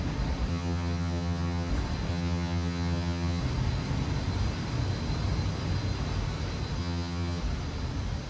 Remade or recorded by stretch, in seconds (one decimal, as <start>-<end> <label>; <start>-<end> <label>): 0.0-0.5 recorded; 0.5-1.7 remade; 1.7-2.1 recorded; 2.1-3.4 remade; 3.4-6.8 recorded; 6.8-7.4 remade; 7.4-8.3 recorded